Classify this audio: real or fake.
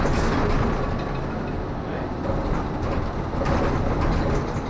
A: real